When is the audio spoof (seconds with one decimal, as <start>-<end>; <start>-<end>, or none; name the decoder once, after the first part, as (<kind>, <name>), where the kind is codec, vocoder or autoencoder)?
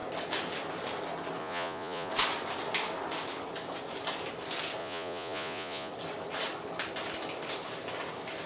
1.4-2.1 (vocoder, Vocos); 4.8-5.9